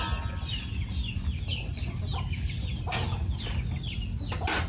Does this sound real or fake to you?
real